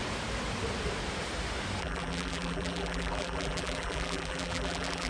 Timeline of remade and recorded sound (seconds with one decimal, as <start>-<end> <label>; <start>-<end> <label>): 0.0-1.8 recorded; 1.8-5.1 remade